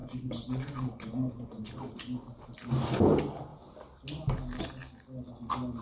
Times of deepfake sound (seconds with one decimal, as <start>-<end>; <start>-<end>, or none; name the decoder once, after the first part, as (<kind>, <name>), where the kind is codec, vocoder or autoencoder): 0.0-1.6 (vocoder, Vocos)